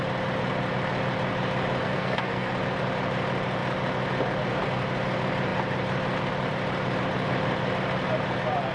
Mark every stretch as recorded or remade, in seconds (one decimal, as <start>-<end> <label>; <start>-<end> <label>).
0.0-1.8 recorded; 1.8-2.5 remade; 2.5-8.7 recorded